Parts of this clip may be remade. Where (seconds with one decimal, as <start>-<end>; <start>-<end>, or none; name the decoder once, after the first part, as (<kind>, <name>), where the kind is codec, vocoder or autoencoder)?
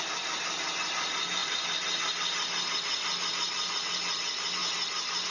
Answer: none